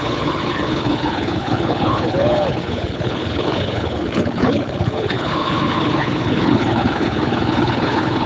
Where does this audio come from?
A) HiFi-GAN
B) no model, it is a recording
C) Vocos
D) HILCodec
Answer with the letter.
D